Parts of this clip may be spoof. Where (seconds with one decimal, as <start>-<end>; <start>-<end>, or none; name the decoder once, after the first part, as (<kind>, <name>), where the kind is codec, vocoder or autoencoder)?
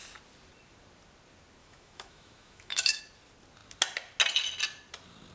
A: 1.6-3.0 (autoencoder, DAC-VAE)